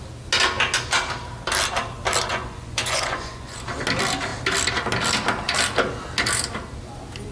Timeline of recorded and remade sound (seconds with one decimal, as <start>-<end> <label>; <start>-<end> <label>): 0.0-2.3 recorded; 2.3-3.6 remade; 3.6-7.3 recorded